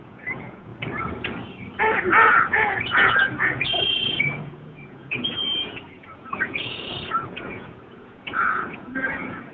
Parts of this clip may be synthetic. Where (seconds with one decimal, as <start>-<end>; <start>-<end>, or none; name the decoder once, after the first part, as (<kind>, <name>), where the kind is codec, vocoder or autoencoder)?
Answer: 0.0-0.7 (vocoder, Vocos); 1.8-9.5